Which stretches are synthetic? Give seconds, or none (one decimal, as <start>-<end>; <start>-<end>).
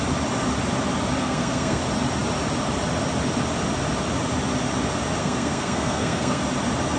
1.2-1.8; 5.2-6.4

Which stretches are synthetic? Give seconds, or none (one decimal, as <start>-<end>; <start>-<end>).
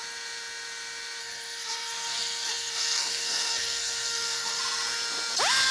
1.2-4.6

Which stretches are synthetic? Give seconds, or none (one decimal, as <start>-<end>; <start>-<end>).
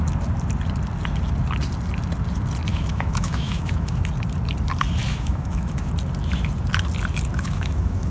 2.7-4.0; 5.0-5.9; 7.3-8.1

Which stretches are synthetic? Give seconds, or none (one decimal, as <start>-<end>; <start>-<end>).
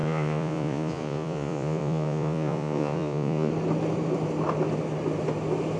0.0-3.5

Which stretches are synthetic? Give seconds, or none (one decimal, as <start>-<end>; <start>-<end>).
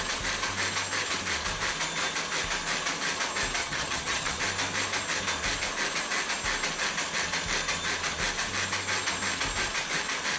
3.6-4.4